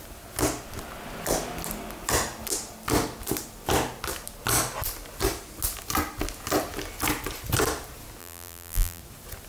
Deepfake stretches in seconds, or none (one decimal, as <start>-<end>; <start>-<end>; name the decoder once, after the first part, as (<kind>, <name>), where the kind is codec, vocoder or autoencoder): 8.2-9.0 (vocoder, BigVGAN v2)